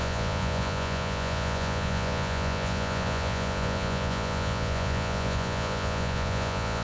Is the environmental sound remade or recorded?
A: remade